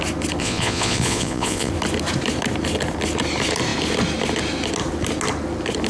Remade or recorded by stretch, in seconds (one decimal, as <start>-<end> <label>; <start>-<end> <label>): 0.0-0.4 recorded; 0.4-1.7 remade; 1.7-5.9 recorded